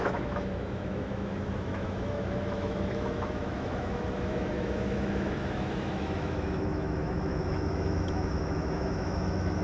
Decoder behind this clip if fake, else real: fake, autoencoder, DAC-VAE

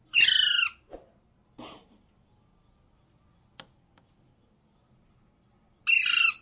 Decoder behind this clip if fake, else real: real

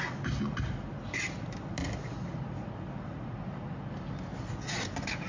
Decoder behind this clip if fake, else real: real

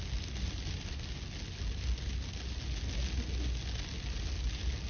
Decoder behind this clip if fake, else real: real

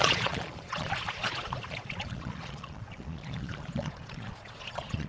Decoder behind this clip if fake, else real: fake, vocoder, Vocos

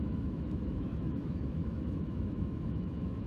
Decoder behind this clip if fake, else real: fake, autoencoder, DAC-VAE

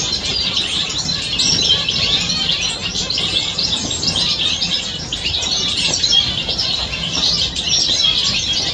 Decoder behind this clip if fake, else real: real